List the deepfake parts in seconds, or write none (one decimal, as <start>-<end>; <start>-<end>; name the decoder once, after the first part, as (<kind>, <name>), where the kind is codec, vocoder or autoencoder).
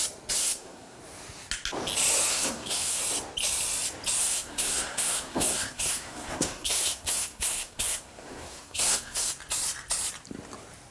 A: 0.4-1.0 (codec, SNAC); 2.3-3.0; 4.2-9.3